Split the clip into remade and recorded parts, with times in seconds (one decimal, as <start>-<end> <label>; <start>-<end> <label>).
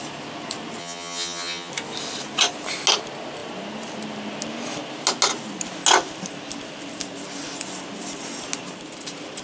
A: 0.0-0.8 recorded; 0.8-1.7 remade; 1.7-9.4 recorded